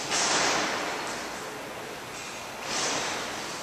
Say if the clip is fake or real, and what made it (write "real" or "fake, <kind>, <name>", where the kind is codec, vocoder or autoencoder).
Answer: real